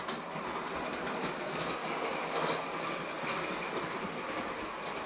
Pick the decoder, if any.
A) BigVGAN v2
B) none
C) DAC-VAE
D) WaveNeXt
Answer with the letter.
B